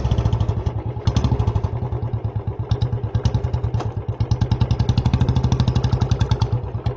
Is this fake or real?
real